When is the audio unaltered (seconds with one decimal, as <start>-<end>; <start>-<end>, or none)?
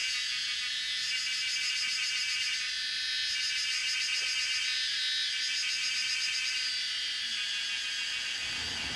1.0-9.0